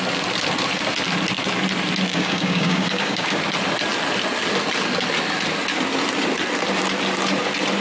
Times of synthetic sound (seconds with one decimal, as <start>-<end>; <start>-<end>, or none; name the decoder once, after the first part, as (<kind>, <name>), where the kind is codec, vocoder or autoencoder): 2.1-3.4 (codec, DAC)